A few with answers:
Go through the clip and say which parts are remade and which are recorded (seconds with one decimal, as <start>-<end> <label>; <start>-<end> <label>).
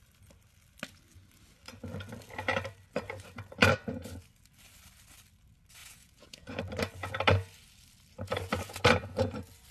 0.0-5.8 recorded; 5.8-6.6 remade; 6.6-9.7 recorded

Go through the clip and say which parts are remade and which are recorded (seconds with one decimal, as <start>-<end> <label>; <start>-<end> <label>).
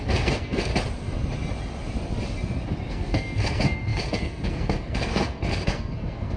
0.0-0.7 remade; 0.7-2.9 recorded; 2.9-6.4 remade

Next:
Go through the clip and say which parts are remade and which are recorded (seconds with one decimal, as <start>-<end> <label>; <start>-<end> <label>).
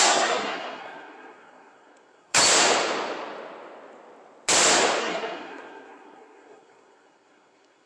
0.0-2.4 remade; 2.4-5.0 recorded; 5.0-7.9 remade